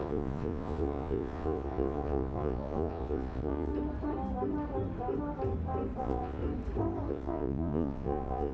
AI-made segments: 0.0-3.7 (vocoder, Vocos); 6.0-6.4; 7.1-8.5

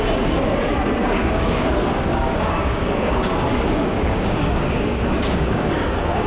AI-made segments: 1.0-1.7 (codec, DAC); 2.1-6.3

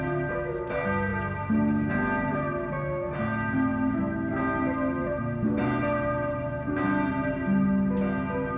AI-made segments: none

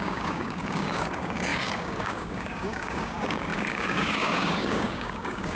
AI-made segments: 0.0-5.6 (codec, DAC)

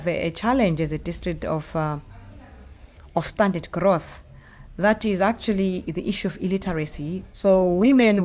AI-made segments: 2.7-3.3 (codec, SNAC); 7.2-8.2

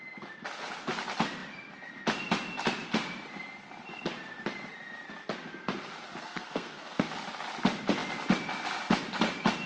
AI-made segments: 6.2-7.1 (codec, SNAC)

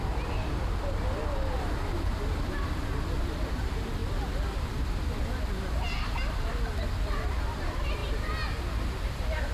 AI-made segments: none

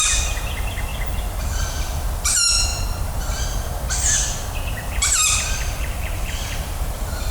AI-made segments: 0.0-0.9 (vocoder, BigVGAN v2); 1.6-2.7; 4.7-7.3